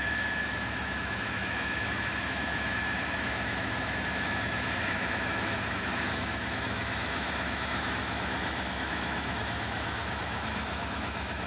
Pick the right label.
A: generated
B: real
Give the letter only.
A